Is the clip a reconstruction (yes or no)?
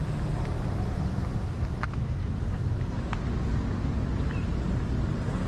no